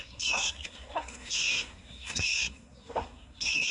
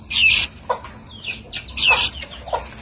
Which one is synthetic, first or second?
first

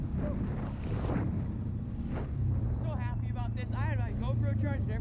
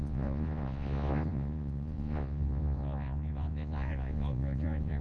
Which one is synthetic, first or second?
second